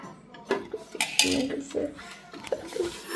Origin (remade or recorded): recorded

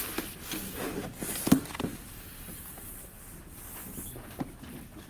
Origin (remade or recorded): recorded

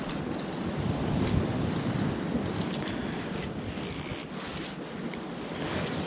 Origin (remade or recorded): recorded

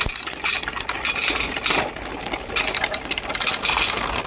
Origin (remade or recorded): recorded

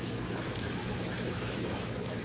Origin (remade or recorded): remade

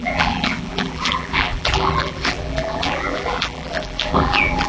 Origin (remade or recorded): remade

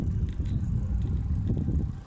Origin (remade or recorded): recorded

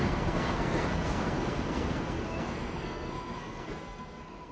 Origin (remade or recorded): remade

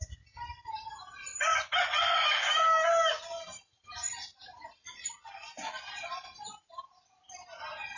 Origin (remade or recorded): recorded